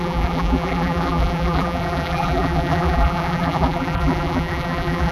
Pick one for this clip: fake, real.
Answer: fake